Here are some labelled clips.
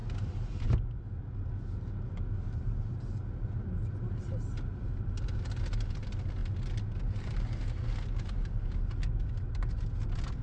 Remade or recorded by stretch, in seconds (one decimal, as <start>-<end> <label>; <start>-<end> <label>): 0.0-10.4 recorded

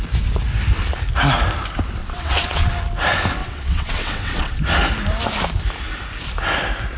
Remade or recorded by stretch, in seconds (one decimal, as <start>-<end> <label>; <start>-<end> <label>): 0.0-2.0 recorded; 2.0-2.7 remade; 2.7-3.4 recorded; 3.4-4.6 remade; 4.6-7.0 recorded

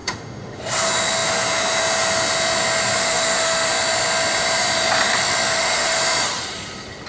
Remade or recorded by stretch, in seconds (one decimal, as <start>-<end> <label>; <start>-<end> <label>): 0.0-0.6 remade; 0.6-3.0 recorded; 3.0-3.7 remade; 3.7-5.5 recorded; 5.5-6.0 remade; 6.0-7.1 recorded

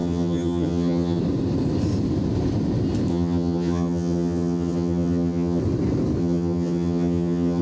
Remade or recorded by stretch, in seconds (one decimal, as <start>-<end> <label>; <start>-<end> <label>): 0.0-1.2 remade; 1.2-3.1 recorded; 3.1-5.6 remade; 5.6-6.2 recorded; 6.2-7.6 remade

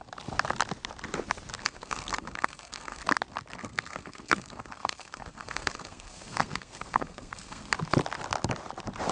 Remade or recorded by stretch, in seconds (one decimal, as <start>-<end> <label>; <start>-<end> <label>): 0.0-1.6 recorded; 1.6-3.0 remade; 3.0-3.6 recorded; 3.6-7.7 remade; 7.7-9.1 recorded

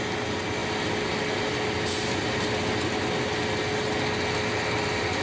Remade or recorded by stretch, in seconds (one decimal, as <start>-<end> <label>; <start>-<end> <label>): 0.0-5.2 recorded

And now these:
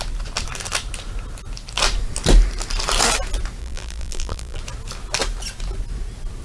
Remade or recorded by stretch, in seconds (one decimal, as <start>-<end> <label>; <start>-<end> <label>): 0.0-3.6 recorded; 3.6-4.6 remade; 4.6-6.4 recorded